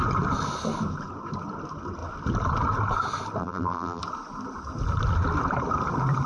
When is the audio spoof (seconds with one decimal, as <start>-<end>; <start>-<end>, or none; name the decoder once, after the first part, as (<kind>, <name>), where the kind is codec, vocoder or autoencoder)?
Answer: 3.4-4.0 (vocoder, BigVGAN v2)